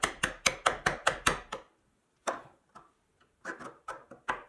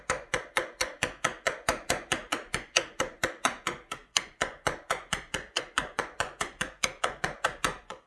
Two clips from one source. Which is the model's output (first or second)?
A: second